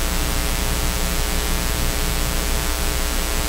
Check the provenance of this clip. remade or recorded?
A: recorded